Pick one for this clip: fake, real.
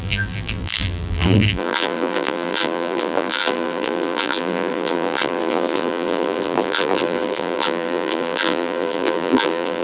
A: fake